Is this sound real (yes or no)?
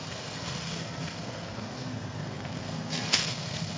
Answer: no